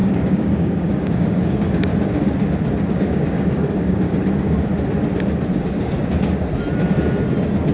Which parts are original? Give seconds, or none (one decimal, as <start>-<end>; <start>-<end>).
1.9-2.9; 4.7-7.7